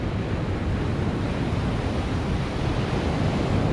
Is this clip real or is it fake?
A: real